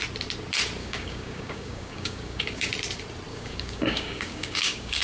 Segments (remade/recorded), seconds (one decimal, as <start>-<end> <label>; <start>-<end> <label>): 0.0-0.8 recorded; 0.8-2.7 remade; 2.7-3.3 recorded; 3.3-5.0 remade